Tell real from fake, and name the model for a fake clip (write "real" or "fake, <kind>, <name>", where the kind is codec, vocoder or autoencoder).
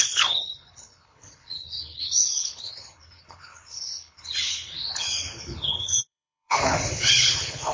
fake, codec, HILCodec